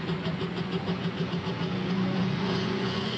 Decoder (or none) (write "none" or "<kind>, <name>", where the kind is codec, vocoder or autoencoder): vocoder, Vocos